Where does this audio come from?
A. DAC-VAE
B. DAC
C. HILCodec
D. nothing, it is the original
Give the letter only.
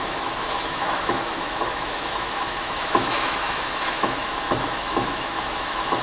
A